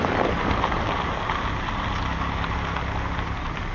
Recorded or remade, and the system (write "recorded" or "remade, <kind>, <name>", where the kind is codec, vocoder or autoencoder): recorded